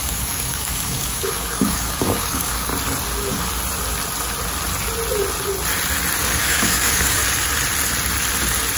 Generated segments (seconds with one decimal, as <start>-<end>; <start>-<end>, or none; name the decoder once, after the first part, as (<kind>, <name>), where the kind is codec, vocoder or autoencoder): 0.0-2.7 (codec, DAC); 6.2-7.2